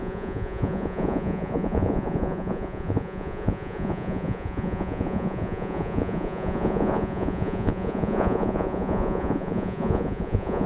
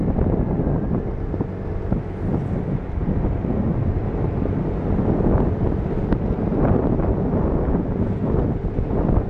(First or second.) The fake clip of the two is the first